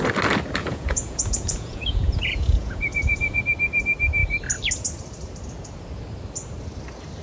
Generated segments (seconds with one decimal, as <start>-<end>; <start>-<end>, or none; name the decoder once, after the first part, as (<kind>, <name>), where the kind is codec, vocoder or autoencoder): 0.6-3.4 (vocoder, Vocos)